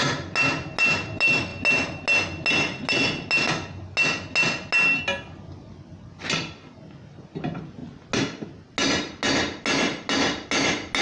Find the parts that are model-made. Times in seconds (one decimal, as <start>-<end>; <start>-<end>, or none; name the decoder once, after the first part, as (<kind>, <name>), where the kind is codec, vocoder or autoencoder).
none